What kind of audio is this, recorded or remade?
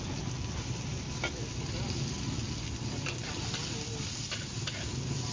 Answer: recorded